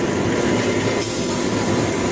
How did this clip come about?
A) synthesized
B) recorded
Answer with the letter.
B